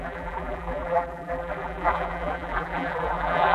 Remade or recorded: remade